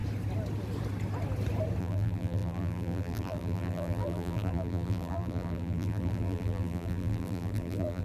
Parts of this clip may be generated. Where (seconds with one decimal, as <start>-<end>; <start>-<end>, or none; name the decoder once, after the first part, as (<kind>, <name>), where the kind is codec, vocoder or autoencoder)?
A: 1.8-8.0 (vocoder, BigVGAN v2)